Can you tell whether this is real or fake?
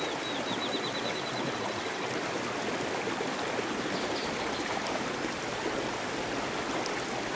real